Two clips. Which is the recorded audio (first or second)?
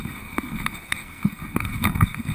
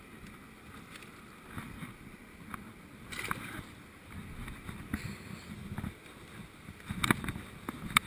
second